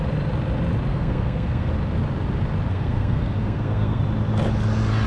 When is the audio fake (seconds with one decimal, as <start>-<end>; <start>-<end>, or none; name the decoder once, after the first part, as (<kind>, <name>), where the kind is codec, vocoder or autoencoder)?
0.9-1.7 (codec, SNAC); 2.7-4.0